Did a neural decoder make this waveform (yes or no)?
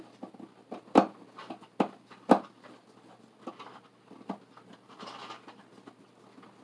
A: no